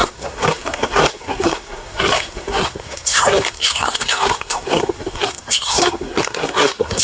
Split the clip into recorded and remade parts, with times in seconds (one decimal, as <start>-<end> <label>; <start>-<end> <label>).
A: 0.0-7.0 remade